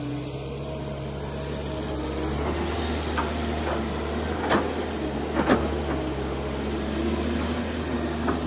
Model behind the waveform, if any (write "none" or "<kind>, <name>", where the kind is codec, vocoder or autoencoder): none